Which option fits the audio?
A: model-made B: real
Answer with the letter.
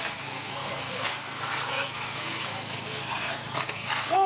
A